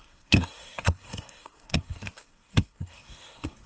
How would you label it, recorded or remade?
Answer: remade